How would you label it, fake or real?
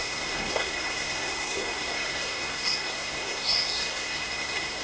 fake